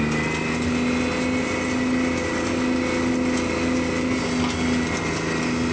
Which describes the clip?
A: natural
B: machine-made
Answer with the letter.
A